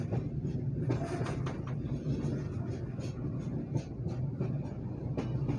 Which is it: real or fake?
real